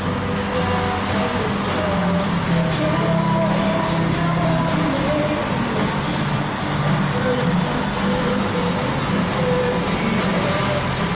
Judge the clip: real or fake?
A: real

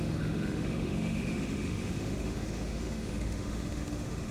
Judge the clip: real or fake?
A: fake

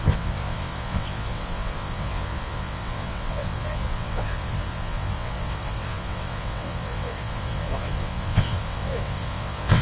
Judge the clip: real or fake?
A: fake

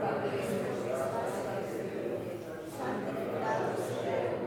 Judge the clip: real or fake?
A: real